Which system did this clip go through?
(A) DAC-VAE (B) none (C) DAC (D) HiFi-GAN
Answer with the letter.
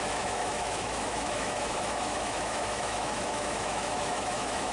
A